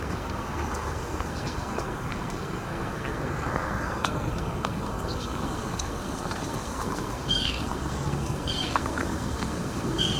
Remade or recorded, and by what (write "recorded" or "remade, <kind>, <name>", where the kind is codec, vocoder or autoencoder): remade, codec, SNAC